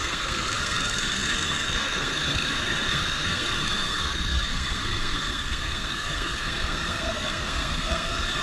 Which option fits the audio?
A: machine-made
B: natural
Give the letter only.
A